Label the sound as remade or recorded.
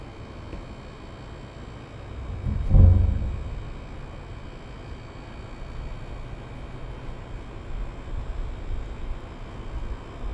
recorded